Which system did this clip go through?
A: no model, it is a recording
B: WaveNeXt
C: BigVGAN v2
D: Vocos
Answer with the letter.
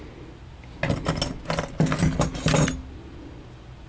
A